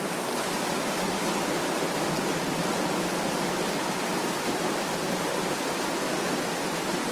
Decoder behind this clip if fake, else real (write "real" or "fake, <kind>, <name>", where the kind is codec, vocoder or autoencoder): real